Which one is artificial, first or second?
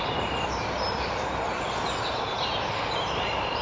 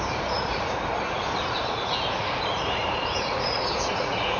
second